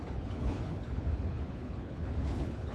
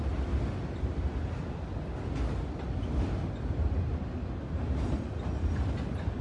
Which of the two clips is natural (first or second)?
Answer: second